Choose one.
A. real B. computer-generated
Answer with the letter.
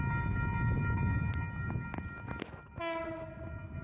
A